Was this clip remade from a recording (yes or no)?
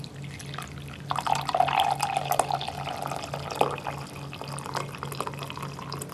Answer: no